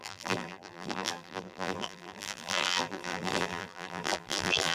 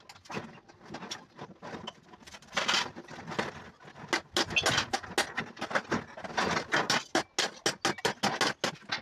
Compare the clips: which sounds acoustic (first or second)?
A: second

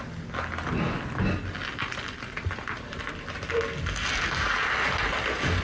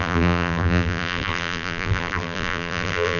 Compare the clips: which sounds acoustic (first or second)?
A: first